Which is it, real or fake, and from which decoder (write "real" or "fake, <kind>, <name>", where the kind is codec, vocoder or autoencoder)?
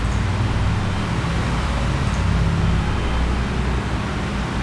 real